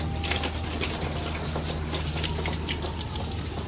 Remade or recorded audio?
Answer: recorded